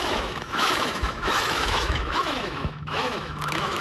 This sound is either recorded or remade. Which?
remade